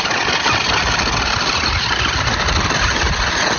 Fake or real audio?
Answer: real